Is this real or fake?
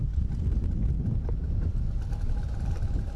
fake